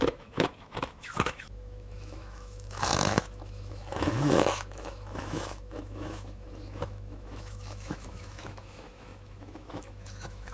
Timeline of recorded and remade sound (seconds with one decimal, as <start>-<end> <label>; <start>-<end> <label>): 0.0-10.5 remade